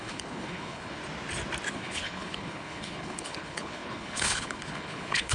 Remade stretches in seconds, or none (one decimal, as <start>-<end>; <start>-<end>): 0.0-1.0; 1.7-5.3